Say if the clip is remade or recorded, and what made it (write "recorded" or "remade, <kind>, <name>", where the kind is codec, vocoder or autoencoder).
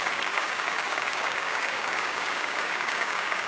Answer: remade, codec, DAC